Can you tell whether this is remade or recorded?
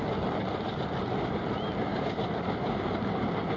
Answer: recorded